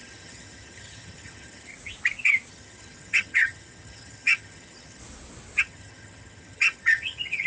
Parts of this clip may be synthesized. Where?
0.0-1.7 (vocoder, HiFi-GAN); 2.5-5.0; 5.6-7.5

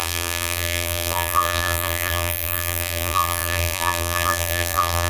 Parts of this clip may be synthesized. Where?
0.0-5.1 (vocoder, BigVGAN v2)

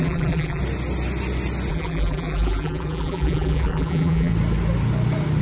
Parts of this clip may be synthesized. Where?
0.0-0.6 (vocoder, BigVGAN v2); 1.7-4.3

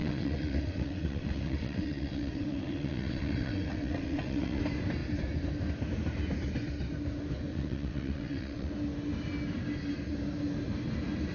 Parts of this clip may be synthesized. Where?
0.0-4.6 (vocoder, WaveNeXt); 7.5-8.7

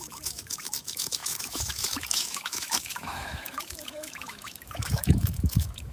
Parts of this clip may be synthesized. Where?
0.0-5.9 (autoencoder, DAC-VAE)